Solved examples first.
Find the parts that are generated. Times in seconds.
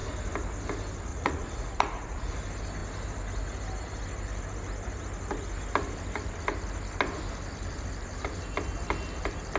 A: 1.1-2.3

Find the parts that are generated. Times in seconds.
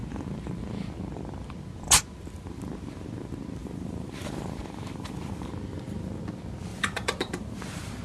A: 3.6-5.5; 6.7-8.0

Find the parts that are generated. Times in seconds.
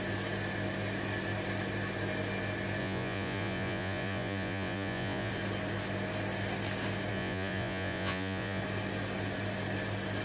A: 2.8-5.3; 7.1-8.6